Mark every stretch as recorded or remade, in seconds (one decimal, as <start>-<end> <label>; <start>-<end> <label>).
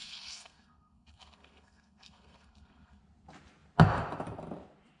0.0-3.0 remade; 3.0-5.0 recorded